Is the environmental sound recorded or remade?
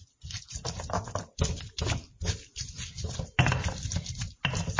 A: recorded